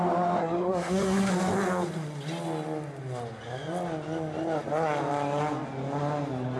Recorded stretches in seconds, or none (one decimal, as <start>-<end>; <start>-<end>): 0.0-0.4; 1.3-6.6